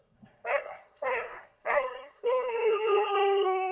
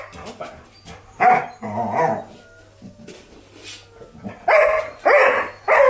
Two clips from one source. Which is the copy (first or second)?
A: first